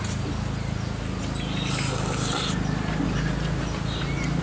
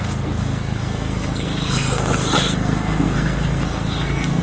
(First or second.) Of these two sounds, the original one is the first